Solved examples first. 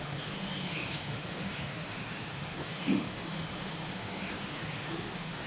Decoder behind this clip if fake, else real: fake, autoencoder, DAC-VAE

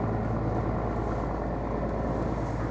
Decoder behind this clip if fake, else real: real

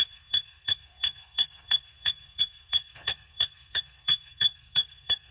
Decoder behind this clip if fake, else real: fake, codec, SNAC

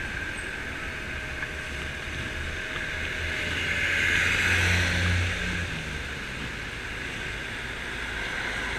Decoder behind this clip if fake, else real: real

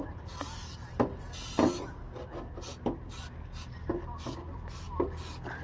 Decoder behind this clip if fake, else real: real